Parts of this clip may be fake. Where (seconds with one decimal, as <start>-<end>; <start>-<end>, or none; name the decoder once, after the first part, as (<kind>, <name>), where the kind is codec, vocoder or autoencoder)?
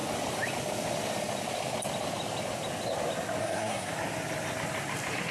3.4-3.9 (codec, SNAC)